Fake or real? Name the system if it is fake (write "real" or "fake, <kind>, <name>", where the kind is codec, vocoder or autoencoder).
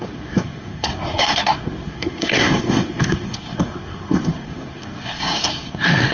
fake, codec, SNAC